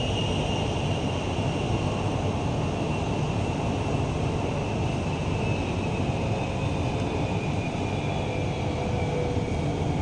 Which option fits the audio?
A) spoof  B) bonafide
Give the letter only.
B